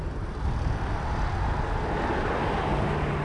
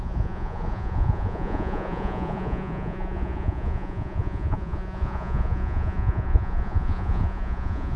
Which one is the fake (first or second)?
second